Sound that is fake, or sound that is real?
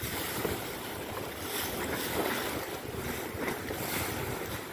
real